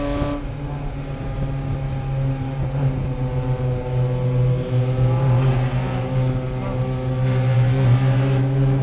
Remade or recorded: recorded